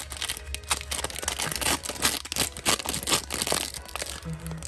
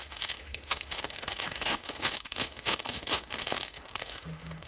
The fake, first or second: second